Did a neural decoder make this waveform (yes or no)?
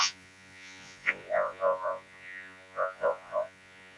yes